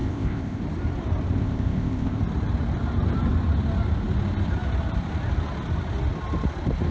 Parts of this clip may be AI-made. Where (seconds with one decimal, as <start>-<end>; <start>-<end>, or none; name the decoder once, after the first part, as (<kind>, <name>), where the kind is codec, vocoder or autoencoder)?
0.0-0.6 (codec, ZipCodec); 1.4-2.2